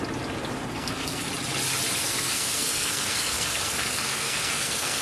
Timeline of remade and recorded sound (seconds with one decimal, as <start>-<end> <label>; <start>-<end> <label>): 0.0-0.7 recorded; 0.7-1.3 remade; 1.3-2.0 recorded; 2.0-5.0 remade